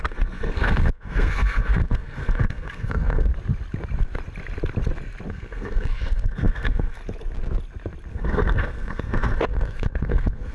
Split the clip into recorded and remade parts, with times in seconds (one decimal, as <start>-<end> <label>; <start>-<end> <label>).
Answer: 0.0-3.3 remade; 3.3-5.3 recorded; 5.3-7.0 remade; 7.0-8.1 recorded; 8.1-10.5 remade